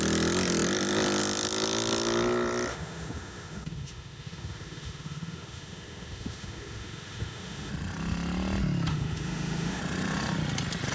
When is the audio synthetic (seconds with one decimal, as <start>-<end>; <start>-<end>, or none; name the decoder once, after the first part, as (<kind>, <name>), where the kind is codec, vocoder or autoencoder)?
2.7-7.7 (autoencoder, DAC-VAE); 8.9-9.8